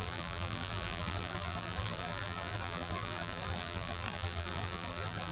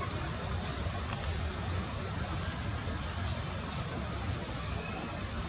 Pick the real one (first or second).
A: second